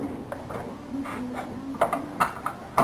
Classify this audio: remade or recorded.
recorded